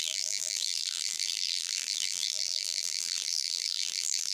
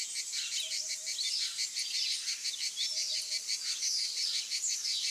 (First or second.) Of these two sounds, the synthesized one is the first